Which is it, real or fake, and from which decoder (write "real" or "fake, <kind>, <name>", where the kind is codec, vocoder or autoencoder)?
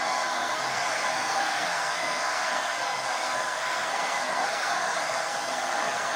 fake, codec, SNAC